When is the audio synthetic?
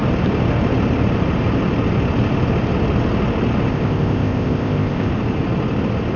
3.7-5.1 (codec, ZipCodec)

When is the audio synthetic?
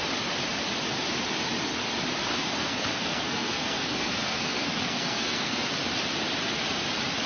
2.3-5.7 (codec, SNAC)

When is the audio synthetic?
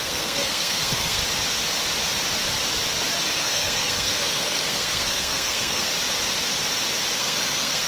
0.0-1.2 (codec, SNAC); 3.4-5.9; 7.2-7.9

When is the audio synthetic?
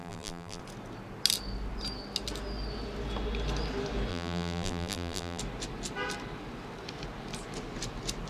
0.0-0.6 (vocoder, BigVGAN v2); 4.1-5.4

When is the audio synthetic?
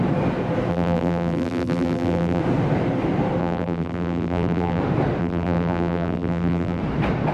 0.7-2.4 (vocoder, BigVGAN v2); 3.4-4.8; 5.2-6.8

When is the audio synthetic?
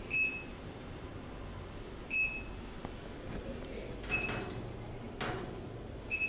0.5-1.1 (vocoder, BigVGAN v2)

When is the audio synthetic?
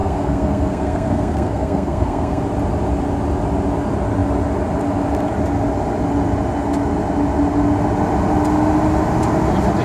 0.0-2.4 (codec, SNAC)